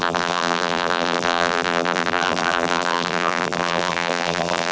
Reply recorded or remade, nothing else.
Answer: remade